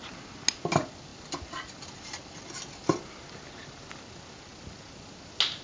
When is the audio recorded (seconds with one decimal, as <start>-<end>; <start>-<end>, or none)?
0.0-5.6